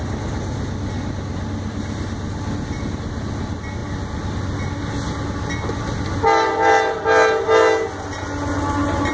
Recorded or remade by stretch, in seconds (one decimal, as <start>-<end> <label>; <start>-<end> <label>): 0.0-9.1 recorded